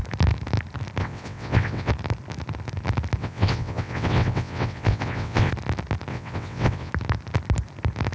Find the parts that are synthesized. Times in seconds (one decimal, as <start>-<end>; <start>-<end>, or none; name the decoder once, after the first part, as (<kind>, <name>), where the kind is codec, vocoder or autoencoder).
1.0-1.9 (vocoder, WaveNeXt); 3.2-5.5; 6.1-6.9